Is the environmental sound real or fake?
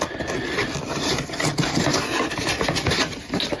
real